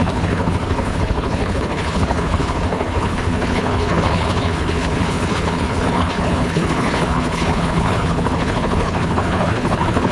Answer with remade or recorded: remade